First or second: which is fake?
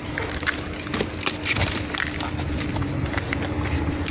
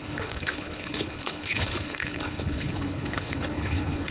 second